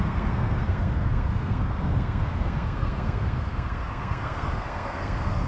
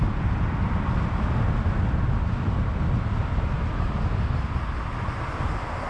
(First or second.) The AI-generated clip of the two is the first